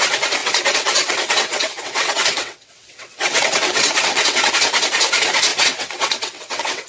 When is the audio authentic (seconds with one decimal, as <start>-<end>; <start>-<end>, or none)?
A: 0.0-0.4; 4.5-5.5